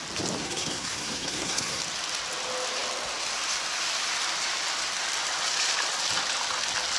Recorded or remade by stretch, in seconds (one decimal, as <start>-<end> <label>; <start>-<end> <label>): 0.0-0.4 recorded; 0.4-1.8 remade; 1.8-7.0 recorded